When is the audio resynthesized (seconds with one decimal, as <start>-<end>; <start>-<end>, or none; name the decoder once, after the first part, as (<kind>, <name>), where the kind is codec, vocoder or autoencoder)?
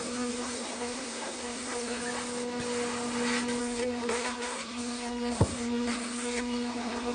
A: 0.0-2.0 (codec, SNAC); 3.6-7.1